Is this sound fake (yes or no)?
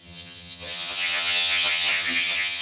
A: yes